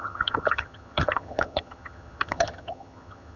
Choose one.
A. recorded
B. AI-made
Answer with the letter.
B